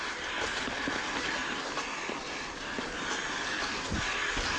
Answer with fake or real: real